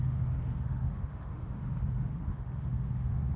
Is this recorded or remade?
remade